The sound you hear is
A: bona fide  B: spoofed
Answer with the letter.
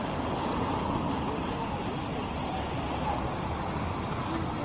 A